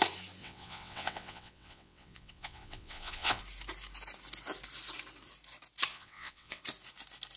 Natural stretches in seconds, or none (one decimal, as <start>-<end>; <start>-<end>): 0.0-0.4; 3.4-5.9; 6.6-7.4